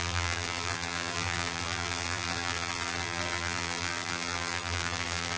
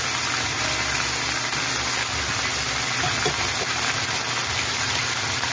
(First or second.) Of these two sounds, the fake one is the first